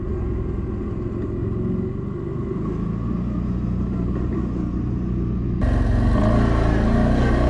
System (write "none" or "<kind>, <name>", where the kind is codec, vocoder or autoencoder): none